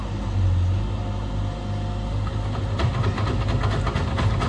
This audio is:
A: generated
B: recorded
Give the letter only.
B